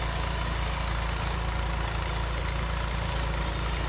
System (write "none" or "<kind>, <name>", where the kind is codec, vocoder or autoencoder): none